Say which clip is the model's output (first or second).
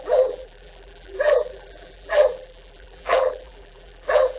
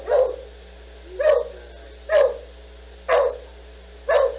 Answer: first